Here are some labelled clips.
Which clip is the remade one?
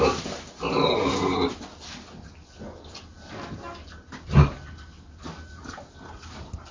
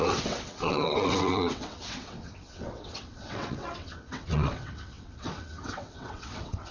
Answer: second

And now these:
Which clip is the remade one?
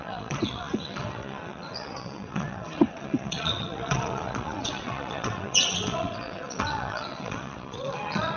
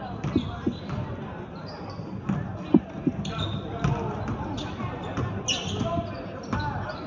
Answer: first